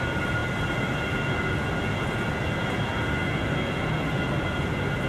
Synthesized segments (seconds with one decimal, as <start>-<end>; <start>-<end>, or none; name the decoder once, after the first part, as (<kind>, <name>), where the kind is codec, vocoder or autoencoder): none